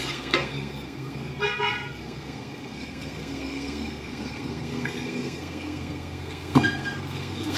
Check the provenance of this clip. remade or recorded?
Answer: remade